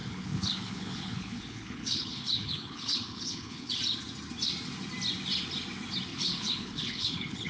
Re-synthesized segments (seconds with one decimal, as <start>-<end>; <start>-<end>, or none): 0.0-3.7; 6.1-7.5